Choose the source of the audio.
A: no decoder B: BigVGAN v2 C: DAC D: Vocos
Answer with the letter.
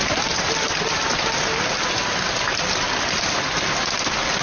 A